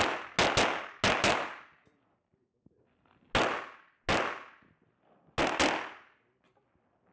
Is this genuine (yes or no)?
yes